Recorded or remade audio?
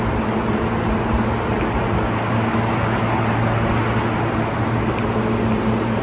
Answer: recorded